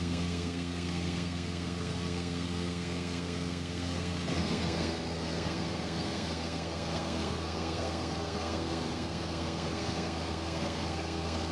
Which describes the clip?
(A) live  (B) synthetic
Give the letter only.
B